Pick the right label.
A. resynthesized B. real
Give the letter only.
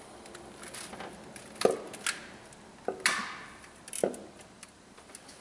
B